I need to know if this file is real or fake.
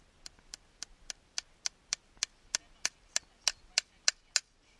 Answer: real